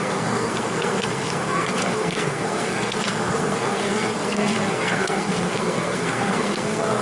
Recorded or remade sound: remade